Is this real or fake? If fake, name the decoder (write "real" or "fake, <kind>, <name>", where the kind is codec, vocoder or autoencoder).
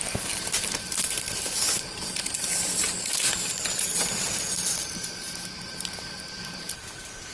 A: fake, vocoder, BigVGAN v2